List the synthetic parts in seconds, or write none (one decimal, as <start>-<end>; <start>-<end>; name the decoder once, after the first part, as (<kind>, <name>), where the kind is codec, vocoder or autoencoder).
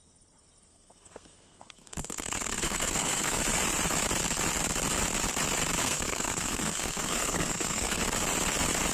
0.7-3.4 (codec, SNAC); 5.8-8.0